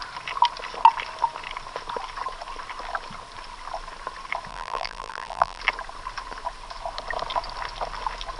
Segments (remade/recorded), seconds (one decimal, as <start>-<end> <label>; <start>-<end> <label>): 0.0-4.5 recorded; 4.5-5.6 remade; 5.6-8.4 recorded